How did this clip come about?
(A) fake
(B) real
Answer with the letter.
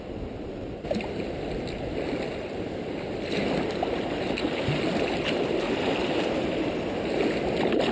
B